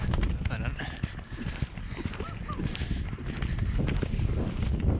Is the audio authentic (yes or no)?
yes